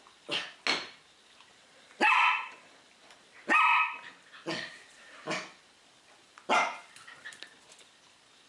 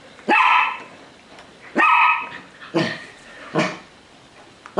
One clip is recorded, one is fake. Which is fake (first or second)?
second